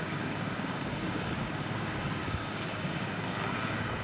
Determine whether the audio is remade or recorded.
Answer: remade